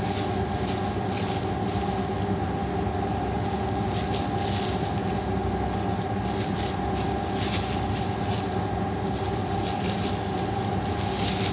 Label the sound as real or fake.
real